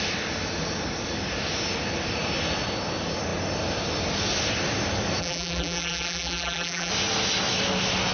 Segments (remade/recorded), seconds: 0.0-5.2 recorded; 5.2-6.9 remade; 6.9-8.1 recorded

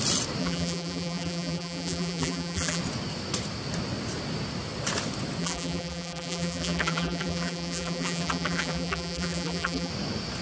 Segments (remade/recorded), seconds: 0.0-0.4 recorded; 0.4-2.8 remade; 2.8-5.4 recorded; 5.4-9.9 remade; 9.9-10.4 recorded

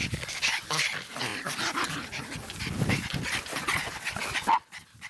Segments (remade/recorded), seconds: 0.0-5.1 recorded

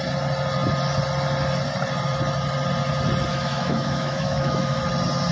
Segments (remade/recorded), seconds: 0.0-3.3 recorded; 3.3-4.8 remade; 4.8-5.3 recorded

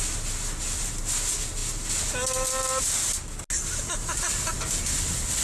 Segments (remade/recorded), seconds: 0.0-5.4 recorded

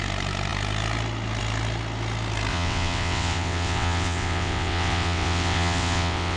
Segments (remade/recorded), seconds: 0.0-2.5 recorded; 2.5-6.4 remade